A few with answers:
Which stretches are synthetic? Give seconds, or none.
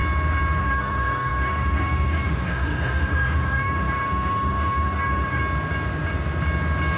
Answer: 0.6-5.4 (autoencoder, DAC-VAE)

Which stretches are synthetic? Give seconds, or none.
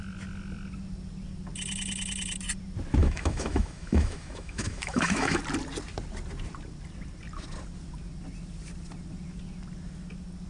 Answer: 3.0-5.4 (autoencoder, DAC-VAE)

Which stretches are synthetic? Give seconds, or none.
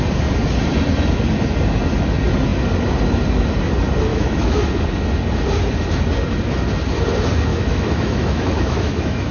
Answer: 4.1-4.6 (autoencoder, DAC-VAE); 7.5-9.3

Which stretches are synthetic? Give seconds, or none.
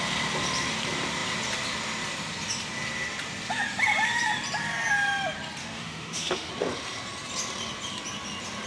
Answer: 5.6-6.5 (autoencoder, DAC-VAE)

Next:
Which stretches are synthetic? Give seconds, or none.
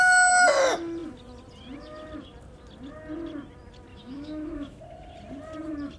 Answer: 3.9-4.8 (autoencoder, DAC-VAE)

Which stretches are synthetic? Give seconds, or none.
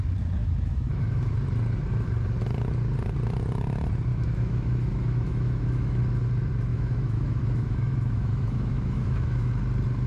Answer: 0.4-1.3 (autoencoder, DAC-VAE); 4.1-6.0; 6.7-9.5